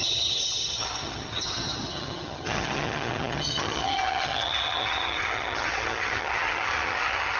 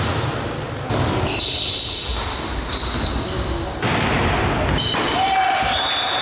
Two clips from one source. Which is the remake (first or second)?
first